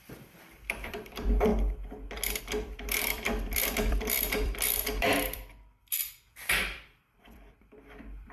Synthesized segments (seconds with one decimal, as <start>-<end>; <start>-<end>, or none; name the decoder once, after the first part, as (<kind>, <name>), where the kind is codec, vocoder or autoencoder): 0.0-1.5 (vocoder, BigVGAN v2); 2.4-6.0; 6.5-8.3